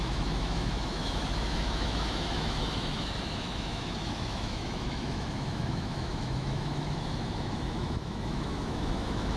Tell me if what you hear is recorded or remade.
remade